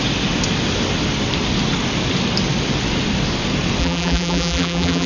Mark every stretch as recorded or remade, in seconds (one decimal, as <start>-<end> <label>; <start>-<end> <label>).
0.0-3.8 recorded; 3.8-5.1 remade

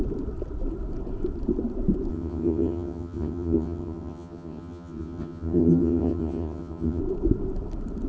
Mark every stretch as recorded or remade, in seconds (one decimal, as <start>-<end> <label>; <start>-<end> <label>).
0.0-2.1 recorded; 2.1-7.0 remade; 7.0-8.1 recorded

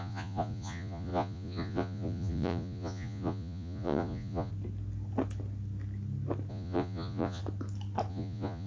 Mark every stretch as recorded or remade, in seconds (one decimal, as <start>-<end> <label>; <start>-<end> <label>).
0.0-4.5 remade; 4.5-6.5 recorded; 6.5-7.4 remade; 7.4-8.1 recorded; 8.1-8.7 remade

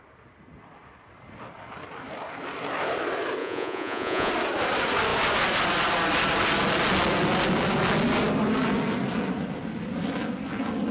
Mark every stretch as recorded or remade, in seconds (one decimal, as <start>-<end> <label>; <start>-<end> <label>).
0.0-3.4 recorded; 3.4-4.3 remade; 4.3-10.9 recorded

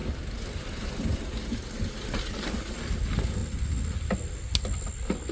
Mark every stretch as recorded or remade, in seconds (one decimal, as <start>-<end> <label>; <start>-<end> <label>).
0.0-5.3 recorded

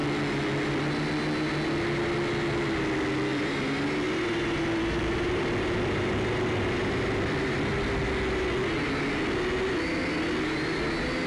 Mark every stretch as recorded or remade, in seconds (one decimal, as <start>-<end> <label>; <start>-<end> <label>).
0.0-3.3 recorded; 3.3-8.0 remade; 8.0-11.3 recorded

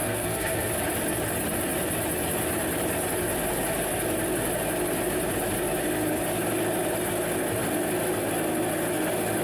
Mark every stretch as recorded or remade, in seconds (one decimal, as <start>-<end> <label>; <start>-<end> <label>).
0.0-0.7 remade; 0.7-9.4 recorded